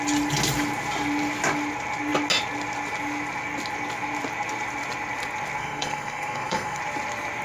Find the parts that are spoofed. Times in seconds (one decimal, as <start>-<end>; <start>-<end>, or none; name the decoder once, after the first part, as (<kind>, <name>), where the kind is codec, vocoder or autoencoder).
5.6-6.8 (codec, SNAC)